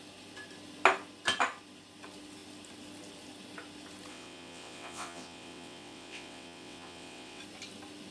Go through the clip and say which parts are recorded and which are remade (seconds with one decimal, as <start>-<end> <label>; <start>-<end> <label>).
0.0-4.1 recorded; 4.1-7.4 remade; 7.4-8.1 recorded